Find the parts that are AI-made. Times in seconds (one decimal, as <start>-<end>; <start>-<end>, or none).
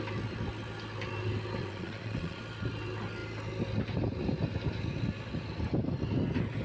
1.6-2.4